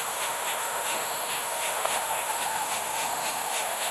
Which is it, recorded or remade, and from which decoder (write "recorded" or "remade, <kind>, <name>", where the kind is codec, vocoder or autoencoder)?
remade, autoencoder, DAC-VAE